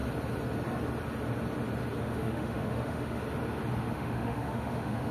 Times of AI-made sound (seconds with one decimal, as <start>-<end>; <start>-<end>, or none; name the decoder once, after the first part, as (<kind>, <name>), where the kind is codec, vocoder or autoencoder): 2.0-3.2 (autoencoder, DAC-VAE); 3.9-5.1